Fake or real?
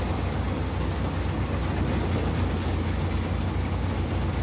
real